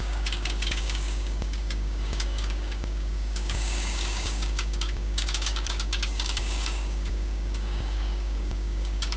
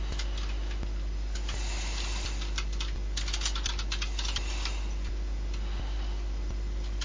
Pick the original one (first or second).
second